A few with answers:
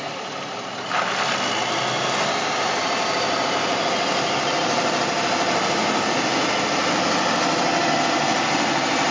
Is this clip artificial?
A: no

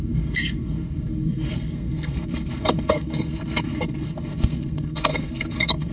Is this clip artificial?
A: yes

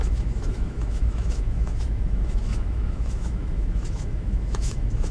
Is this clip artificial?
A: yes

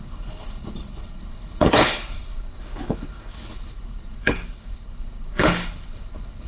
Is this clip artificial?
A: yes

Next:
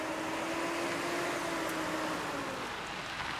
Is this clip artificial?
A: no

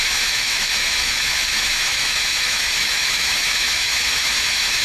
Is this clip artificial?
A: yes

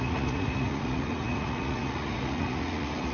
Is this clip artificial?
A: yes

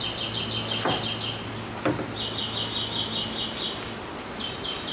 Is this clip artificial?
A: no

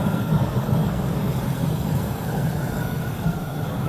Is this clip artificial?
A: yes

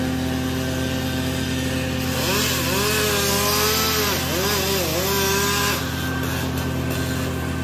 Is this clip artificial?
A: no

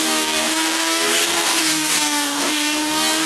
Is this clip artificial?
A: yes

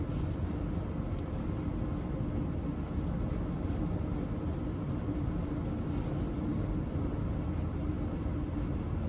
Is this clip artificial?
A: no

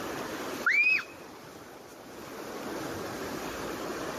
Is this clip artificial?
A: no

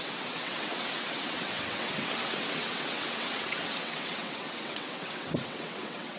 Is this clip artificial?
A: yes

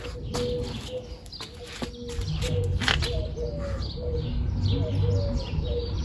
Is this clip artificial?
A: no